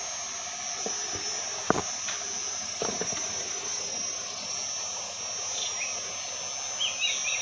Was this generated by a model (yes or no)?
no